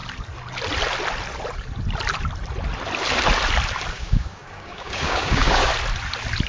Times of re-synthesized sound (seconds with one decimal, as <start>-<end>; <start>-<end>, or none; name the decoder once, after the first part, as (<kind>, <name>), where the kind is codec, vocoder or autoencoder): 3.9-5.7 (codec, DAC)